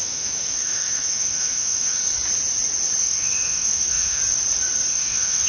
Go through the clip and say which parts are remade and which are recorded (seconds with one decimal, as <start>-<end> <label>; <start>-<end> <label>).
0.0-2.0 remade; 2.0-3.0 recorded; 3.0-4.2 remade; 4.2-4.9 recorded; 4.9-5.5 remade

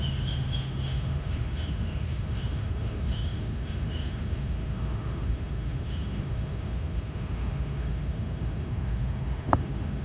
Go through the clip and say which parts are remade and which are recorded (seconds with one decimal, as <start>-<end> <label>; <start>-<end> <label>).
0.0-10.0 remade

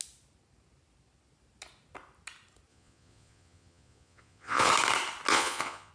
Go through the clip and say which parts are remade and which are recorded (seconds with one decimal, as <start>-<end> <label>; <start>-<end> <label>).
0.0-2.7 recorded; 2.7-4.7 remade; 4.7-5.3 recorded; 5.3-5.9 remade

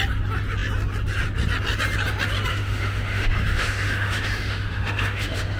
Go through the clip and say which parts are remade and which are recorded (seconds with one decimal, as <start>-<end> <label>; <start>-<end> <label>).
0.0-2.5 recorded; 2.5-5.6 remade